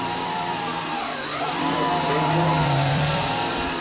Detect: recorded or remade remade